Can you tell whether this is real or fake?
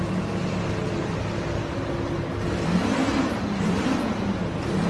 real